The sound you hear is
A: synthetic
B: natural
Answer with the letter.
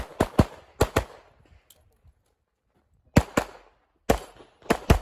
B